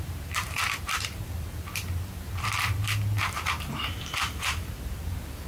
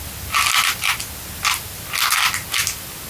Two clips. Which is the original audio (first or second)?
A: second